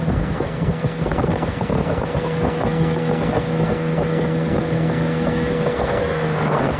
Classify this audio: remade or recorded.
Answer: remade